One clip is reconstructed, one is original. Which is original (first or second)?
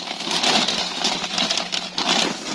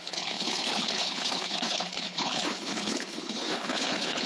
first